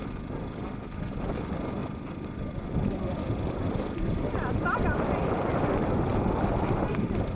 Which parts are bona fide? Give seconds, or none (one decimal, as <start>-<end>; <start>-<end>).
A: 1.1-1.8; 6.1-7.3

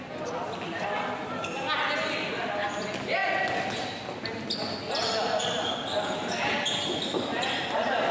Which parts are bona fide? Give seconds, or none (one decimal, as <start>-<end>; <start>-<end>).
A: 0.0-8.1

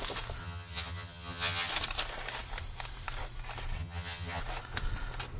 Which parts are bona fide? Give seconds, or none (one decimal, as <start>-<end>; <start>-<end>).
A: 0.0-0.4; 1.7-3.8; 4.4-5.4